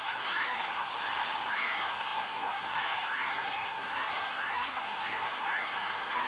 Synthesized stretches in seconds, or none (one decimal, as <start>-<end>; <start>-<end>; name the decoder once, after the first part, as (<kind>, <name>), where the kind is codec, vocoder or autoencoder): 0.0-0.9 (codec, SNAC); 1.5-6.3